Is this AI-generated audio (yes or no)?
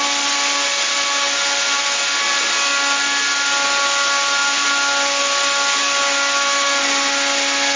no